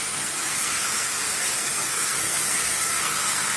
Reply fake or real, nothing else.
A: fake